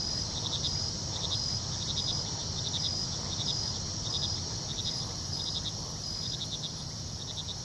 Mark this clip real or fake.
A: real